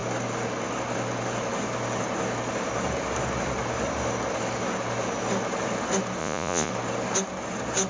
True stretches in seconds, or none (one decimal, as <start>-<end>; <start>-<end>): 0.0-6.2; 6.7-7.9